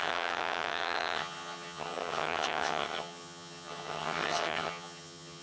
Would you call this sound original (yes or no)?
no